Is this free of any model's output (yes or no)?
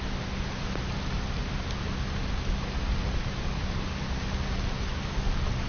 yes